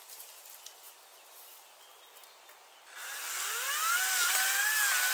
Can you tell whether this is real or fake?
real